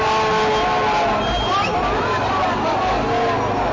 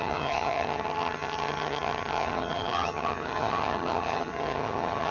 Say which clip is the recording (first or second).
first